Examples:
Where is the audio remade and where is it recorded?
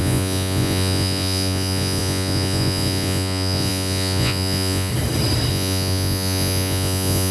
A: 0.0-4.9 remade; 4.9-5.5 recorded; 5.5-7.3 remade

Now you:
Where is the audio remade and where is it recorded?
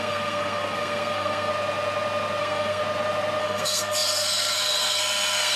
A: 0.0-1.5 remade; 1.5-2.4 recorded; 2.4-2.8 remade; 2.8-3.4 recorded; 3.4-5.6 remade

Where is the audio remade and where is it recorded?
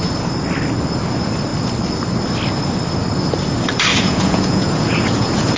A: 0.0-3.9 recorded; 3.9-5.6 remade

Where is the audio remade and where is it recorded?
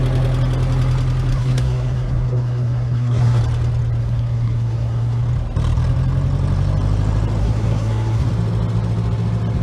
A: 0.0-1.3 recorded; 1.3-3.4 remade; 3.4-4.0 recorded; 4.0-5.2 remade; 5.2-7.4 recorded; 7.4-8.3 remade; 8.3-9.6 recorded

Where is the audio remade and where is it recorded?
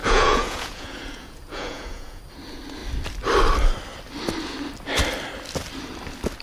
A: 0.0-2.2 remade; 2.2-6.4 recorded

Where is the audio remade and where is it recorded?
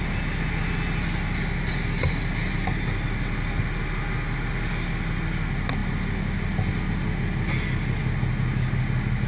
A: 0.0-9.3 recorded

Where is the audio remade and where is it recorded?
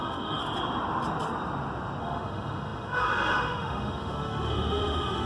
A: 0.0-0.4 remade; 0.4-2.0 recorded; 2.0-5.3 remade